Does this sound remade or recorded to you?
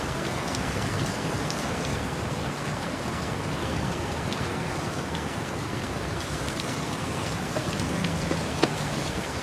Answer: remade